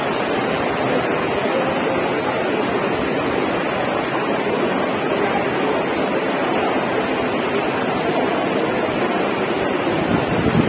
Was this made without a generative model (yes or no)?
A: yes